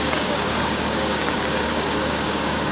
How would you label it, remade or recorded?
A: remade